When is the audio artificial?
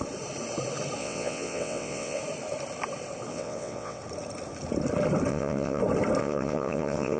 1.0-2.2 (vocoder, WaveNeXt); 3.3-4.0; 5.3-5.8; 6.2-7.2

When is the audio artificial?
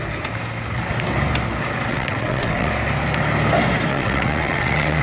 1.9-2.7 (vocoder, WaveNeXt); 3.9-5.0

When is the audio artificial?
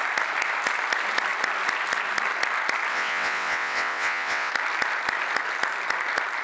2.9-4.5 (vocoder, WaveNeXt)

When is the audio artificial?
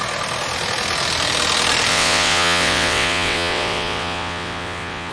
1.9-5.1 (vocoder, WaveNeXt)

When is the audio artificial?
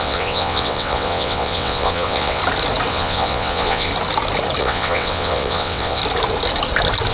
0.0-2.4 (vocoder, WaveNeXt); 2.9-3.9; 4.6-6.0